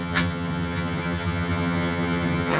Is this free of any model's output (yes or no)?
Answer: no